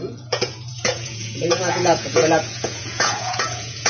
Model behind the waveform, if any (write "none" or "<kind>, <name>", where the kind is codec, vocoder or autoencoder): vocoder, Vocos